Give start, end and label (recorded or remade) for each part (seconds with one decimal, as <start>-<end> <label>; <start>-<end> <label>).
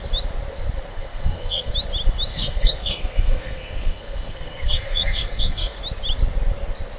0.0-0.9 recorded; 0.9-1.7 remade; 1.7-2.3 recorded; 2.3-5.8 remade; 5.8-7.0 recorded